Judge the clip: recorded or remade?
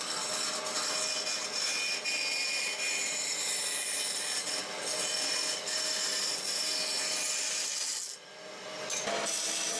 recorded